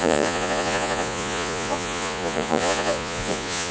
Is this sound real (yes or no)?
no